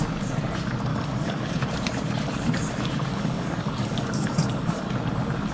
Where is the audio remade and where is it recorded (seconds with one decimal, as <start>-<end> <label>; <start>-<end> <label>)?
0.0-0.9 recorded; 0.9-1.6 remade; 1.6-3.1 recorded; 3.1-4.9 remade; 4.9-5.5 recorded